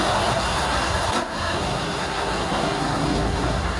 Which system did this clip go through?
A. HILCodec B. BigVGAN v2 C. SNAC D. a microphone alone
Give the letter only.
C